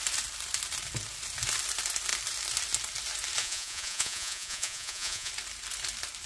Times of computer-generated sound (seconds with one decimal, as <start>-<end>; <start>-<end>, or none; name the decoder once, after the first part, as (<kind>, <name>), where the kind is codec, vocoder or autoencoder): 3.4-5.3 (vocoder, Vocos)